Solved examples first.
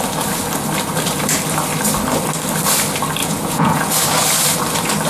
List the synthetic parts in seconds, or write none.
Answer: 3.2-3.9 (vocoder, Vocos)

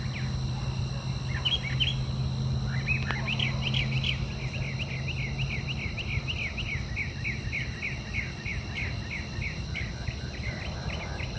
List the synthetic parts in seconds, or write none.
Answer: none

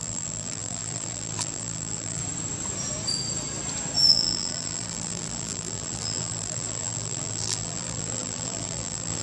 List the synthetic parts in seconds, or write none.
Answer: 0.0-2.2 (vocoder, BigVGAN v2); 4.1-9.2